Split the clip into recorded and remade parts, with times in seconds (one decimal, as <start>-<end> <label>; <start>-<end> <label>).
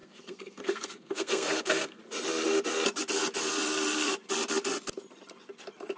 0.0-2.0 remade; 2.0-6.0 recorded